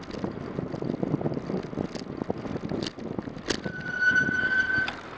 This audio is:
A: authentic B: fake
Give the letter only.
A